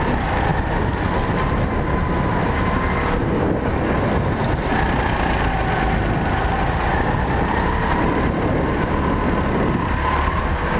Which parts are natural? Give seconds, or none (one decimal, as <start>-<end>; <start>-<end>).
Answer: 0.0-10.8